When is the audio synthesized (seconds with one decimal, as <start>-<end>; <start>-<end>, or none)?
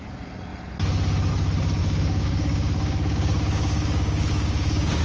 1.8-5.0